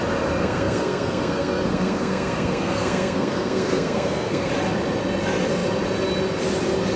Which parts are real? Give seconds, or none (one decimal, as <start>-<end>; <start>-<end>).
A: 0.0-0.4; 4.5-7.0